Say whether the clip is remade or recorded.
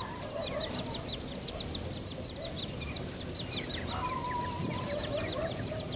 recorded